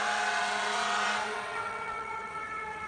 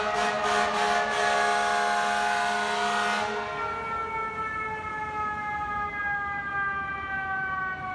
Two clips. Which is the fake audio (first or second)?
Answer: first